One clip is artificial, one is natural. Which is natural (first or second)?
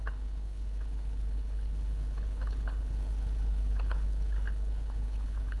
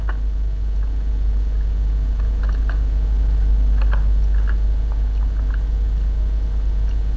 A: second